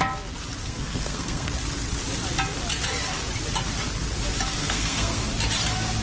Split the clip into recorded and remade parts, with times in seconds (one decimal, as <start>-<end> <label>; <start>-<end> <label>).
0.0-0.6 recorded; 0.6-1.5 remade; 1.5-4.6 recorded; 4.6-5.3 remade; 5.3-6.0 recorded

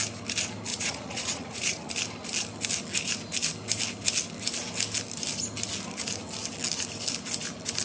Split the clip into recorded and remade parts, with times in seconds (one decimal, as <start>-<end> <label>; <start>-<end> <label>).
0.0-0.7 recorded; 0.7-1.9 remade; 1.9-7.8 recorded

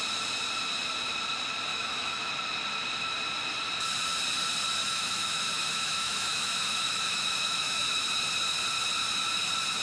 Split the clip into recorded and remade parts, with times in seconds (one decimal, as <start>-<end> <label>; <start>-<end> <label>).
0.0-1.7 recorded; 1.7-2.3 remade; 2.3-4.8 recorded; 4.8-8.0 remade; 8.0-9.8 recorded

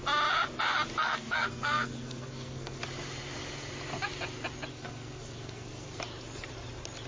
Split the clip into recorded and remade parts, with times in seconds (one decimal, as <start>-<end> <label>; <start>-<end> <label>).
0.0-1.0 recorded; 1.0-2.8 remade; 2.8-4.7 recorded; 4.7-6.0 remade; 6.0-7.1 recorded

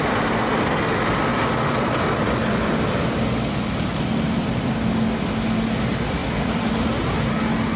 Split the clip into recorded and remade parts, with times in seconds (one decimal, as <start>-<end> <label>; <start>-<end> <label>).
0.0-1.3 recorded; 1.3-4.7 remade; 4.7-6.2 recorded; 6.2-6.7 remade; 6.7-7.8 recorded

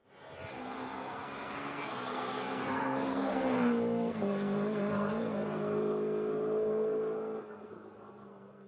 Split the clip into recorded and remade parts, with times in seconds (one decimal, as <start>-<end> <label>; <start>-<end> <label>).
0.0-0.6 recorded; 0.6-8.7 remade